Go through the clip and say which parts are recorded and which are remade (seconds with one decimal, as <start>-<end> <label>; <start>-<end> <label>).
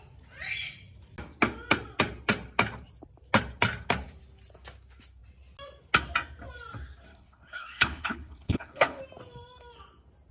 0.0-7.1 recorded; 7.1-9.0 remade; 9.0-10.3 recorded